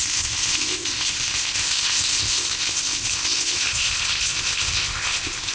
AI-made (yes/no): yes